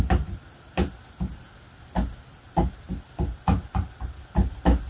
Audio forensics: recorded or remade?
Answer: recorded